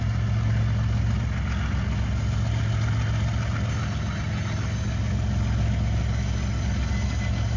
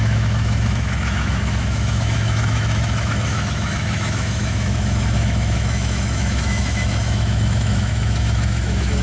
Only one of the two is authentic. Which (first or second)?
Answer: first